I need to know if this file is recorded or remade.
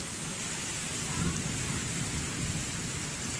recorded